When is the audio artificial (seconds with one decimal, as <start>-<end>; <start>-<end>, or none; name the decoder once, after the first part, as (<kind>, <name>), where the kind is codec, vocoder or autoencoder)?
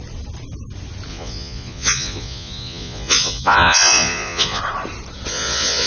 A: 1.1-4.6 (vocoder, Vocos); 5.3-5.9